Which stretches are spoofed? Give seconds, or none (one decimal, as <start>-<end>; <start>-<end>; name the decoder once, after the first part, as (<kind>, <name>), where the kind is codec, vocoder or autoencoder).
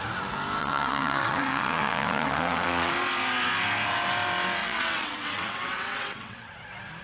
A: 0.6-2.9 (vocoder, WaveNeXt); 4.6-6.5